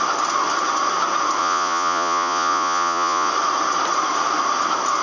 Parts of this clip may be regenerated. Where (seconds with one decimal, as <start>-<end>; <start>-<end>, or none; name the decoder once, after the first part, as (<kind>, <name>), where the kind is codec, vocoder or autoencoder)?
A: 1.4-3.3 (vocoder, Vocos)